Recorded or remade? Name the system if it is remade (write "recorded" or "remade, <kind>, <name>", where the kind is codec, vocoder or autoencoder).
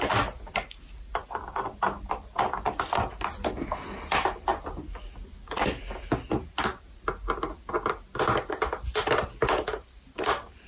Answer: recorded